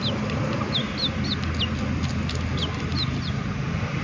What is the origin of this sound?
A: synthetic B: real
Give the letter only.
B